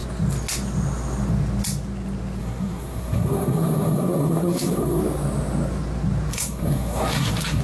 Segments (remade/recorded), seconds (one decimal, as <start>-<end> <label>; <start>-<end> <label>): 0.0-2.4 recorded; 2.4-5.0 remade; 5.0-6.3 recorded; 6.3-7.6 remade